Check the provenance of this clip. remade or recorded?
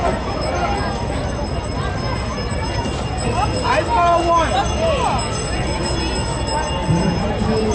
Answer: recorded